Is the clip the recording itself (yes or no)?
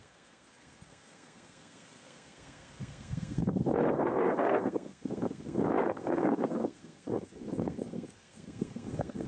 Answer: no